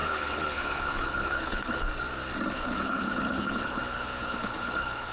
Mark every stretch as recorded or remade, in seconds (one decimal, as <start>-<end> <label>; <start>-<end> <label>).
0.0-1.9 remade; 1.9-2.5 recorded; 2.5-5.1 remade